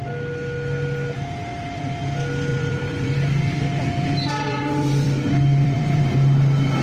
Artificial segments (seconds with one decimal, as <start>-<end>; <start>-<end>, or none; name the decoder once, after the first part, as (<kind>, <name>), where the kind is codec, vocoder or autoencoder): 1.5-2.0 (vocoder, BigVGAN v2); 2.5-6.0